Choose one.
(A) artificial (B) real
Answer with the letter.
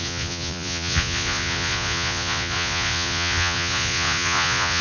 A